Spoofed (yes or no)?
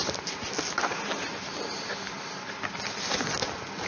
no